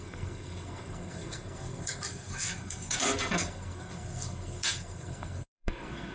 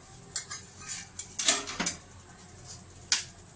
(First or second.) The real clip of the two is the second